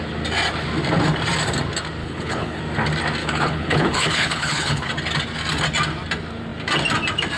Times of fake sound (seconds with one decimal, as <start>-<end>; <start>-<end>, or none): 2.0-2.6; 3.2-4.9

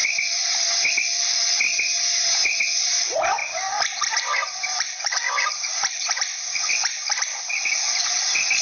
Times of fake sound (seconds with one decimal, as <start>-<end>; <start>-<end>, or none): 0.9-1.7; 3.0-8.6

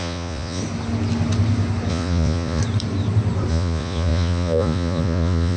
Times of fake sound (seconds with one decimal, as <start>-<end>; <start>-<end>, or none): 0.0-0.6; 1.9-2.6; 3.5-5.6